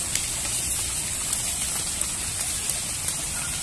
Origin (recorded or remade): recorded